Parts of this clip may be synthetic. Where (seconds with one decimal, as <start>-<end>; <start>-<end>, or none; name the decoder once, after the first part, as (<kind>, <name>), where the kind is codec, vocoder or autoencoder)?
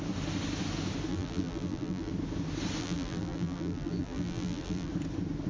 1.1-2.1 (vocoder, BigVGAN v2); 2.8-4.9